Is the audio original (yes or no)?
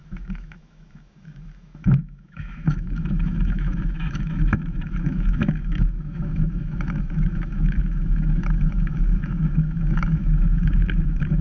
no